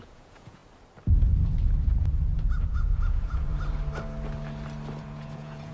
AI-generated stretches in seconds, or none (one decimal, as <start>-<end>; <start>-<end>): 0.0-0.6; 2.7-3.5; 5.0-5.7